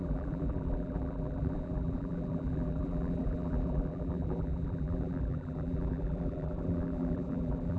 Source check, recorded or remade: remade